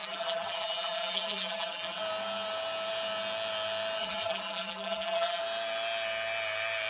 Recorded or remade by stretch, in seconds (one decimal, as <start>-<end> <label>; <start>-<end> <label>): 0.0-2.0 remade; 2.0-4.0 recorded; 4.0-5.4 remade; 5.4-6.9 recorded